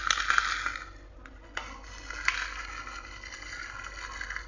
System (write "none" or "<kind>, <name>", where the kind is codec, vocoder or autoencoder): none